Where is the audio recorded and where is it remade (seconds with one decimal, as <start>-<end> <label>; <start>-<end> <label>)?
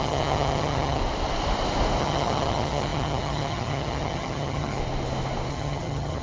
0.0-1.0 remade; 1.0-2.0 recorded; 2.0-4.8 remade; 4.8-5.5 recorded; 5.5-6.2 remade